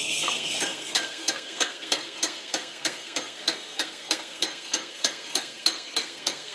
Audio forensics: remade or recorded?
remade